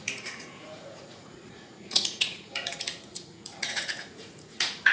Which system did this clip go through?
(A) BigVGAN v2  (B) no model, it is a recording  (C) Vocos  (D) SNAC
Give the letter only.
C